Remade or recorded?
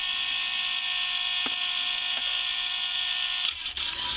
recorded